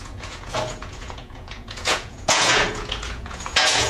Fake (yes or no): yes